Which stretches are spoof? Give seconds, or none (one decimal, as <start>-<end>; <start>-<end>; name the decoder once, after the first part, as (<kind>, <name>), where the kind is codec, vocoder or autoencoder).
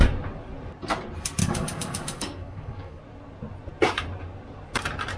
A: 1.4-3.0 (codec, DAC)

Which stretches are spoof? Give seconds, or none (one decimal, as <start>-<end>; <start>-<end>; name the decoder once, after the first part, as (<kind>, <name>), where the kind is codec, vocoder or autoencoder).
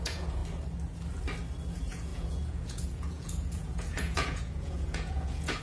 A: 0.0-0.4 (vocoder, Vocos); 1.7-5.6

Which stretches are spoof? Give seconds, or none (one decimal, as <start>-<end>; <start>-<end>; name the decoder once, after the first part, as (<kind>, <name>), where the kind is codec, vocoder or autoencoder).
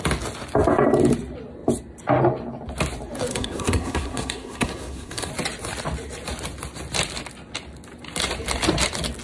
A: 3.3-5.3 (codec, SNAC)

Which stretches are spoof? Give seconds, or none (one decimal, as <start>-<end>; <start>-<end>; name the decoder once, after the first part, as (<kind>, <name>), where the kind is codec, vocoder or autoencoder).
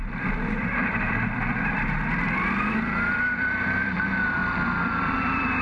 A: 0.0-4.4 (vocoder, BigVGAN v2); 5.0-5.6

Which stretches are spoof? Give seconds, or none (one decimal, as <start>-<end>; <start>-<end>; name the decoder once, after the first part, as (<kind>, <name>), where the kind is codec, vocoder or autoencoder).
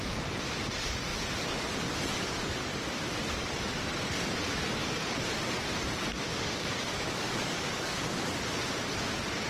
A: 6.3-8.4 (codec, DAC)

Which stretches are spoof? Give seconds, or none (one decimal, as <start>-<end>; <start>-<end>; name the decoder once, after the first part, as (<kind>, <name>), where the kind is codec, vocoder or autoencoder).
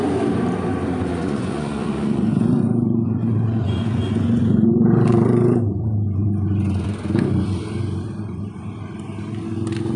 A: 1.1-5.6 (vocoder, Vocos)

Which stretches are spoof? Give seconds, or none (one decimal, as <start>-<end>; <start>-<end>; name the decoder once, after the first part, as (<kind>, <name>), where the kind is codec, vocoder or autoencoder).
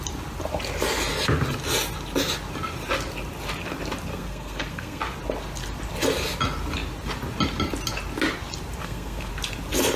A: 4.1-5.0 (codec, SNAC); 8.8-9.3